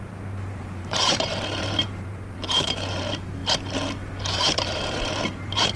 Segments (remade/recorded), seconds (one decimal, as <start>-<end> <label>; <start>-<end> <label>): 0.0-3.4 remade; 3.4-4.4 recorded; 4.4-5.8 remade